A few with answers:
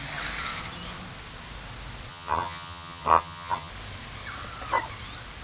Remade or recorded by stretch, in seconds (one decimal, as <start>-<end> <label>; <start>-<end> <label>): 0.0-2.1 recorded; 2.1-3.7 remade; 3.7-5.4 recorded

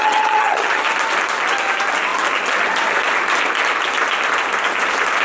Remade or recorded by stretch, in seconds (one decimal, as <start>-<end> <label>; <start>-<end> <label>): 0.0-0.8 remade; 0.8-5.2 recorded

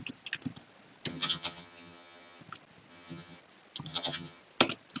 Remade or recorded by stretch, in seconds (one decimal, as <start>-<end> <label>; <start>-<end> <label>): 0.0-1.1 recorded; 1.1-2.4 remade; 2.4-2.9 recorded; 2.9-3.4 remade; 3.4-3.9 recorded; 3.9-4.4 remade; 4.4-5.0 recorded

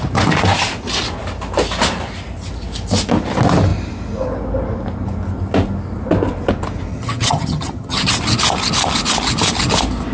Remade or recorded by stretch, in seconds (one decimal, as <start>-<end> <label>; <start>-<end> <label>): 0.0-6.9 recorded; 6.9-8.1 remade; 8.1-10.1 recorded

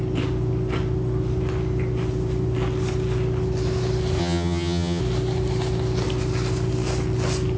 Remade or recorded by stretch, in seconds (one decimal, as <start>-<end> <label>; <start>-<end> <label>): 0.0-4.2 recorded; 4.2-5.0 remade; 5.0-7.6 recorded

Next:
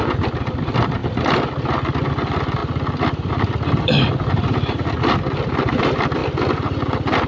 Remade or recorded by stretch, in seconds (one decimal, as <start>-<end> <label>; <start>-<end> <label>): 0.0-7.3 recorded

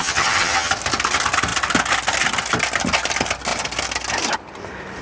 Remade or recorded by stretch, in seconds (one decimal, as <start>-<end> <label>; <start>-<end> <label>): 0.0-0.7 remade; 0.7-5.0 recorded

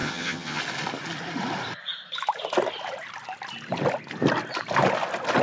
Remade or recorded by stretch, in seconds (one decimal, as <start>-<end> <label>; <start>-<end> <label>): 0.0-0.6 remade; 0.6-5.4 recorded